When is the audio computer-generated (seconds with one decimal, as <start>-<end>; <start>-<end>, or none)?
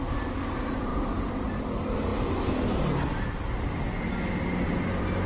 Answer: none